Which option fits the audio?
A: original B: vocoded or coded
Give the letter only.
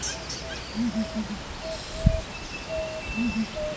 A